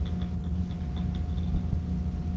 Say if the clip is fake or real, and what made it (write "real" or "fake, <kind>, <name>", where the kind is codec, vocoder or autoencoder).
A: real